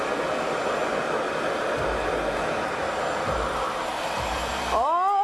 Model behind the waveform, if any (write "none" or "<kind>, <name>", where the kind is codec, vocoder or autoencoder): none